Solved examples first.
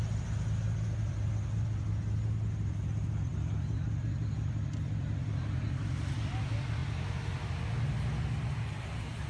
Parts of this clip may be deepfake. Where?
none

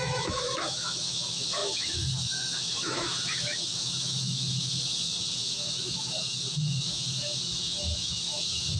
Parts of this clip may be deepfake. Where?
0.0-8.8 (autoencoder, DAC-VAE)

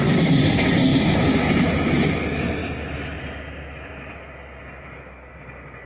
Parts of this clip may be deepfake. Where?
none

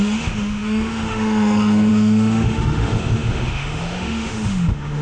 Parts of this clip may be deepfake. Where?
0.0-5.0 (autoencoder, DAC-VAE)

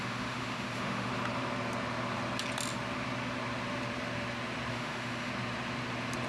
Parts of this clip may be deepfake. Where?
0.0-1.1 (autoencoder, DAC-VAE); 4.7-5.3